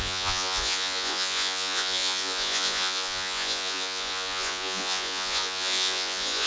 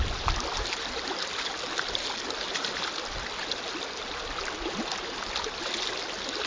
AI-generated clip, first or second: first